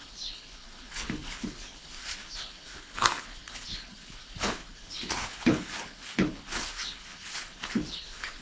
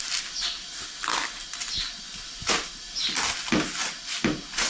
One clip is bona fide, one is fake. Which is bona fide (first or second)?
second